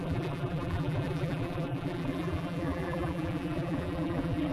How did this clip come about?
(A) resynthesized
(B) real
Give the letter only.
A